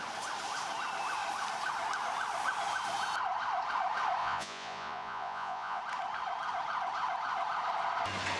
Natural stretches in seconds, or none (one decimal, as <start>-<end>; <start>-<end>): 0.0-4.2; 5.8-8.4